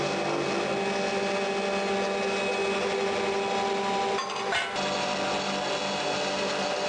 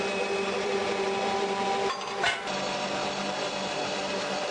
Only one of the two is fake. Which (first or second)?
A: second